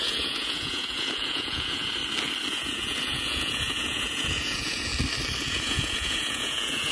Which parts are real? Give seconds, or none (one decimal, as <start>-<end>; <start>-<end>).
2.0-2.5; 4.9-5.4